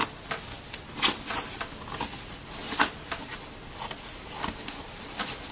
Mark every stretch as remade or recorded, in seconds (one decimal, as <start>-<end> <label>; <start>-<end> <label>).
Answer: 0.0-5.5 recorded